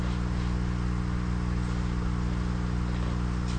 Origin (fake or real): real